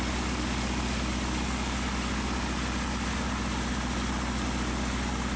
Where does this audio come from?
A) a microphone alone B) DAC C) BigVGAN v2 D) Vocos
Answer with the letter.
A